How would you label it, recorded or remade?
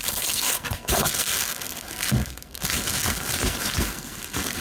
remade